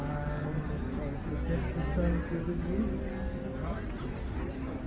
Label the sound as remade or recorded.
recorded